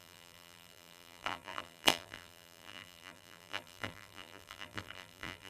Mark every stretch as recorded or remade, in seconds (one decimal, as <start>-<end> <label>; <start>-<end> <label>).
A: 0.0-5.5 remade